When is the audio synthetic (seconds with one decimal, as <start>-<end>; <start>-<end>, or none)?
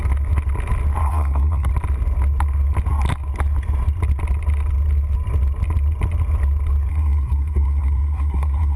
1.0-1.7; 6.9-8.8